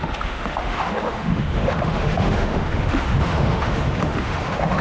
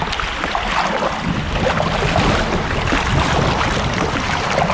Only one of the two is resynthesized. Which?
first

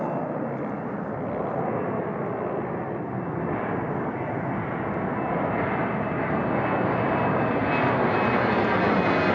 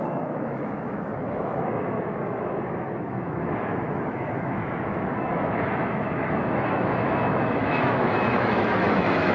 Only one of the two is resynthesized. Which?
second